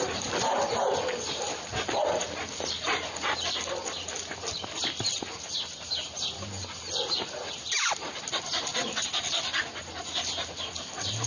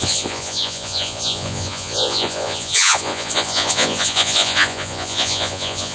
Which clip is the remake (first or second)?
second